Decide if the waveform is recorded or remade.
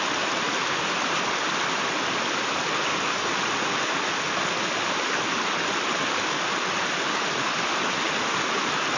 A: recorded